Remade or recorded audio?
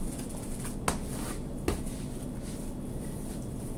recorded